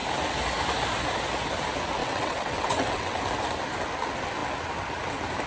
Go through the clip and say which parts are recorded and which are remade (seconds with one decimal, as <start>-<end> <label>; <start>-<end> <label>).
0.0-2.0 recorded; 2.0-3.2 remade; 3.2-5.5 recorded